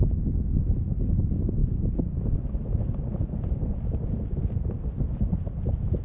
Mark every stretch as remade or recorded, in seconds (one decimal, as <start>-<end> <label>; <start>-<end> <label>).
0.0-6.0 recorded